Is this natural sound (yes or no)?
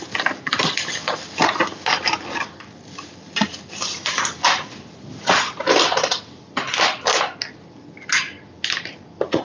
yes